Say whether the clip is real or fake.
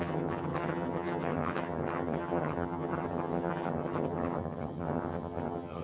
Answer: fake